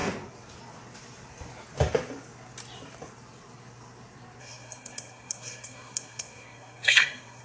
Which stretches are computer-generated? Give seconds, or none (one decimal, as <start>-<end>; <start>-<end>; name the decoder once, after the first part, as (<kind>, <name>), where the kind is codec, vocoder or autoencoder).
4.4-7.4 (codec, SNAC)